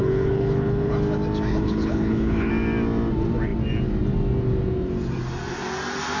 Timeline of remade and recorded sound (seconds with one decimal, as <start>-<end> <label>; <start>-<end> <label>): 0.0-0.9 remade; 0.9-1.5 recorded; 1.5-2.5 remade; 2.5-6.2 recorded